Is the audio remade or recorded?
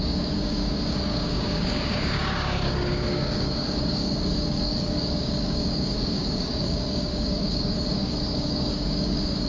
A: remade